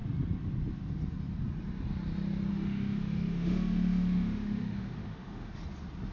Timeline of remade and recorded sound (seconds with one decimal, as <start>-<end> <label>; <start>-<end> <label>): 0.0-2.5 recorded; 2.5-5.5 remade; 5.5-6.1 recorded